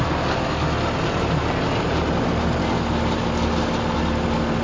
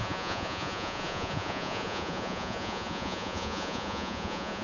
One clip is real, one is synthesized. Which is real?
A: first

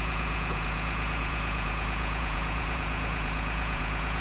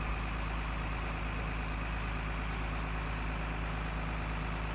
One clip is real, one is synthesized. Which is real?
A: second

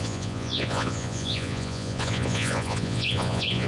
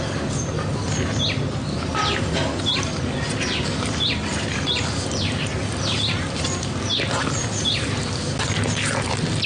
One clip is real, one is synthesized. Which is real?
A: second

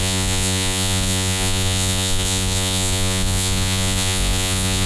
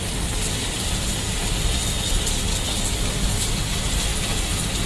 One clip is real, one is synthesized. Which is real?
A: second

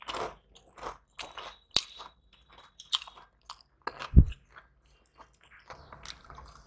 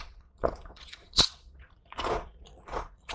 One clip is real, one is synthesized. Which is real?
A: first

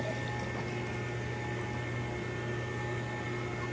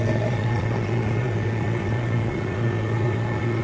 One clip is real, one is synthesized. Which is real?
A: first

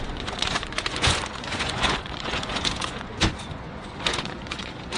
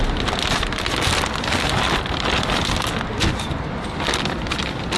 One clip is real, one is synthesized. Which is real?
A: second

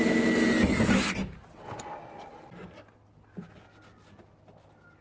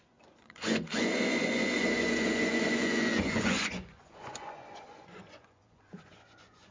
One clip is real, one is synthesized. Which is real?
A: first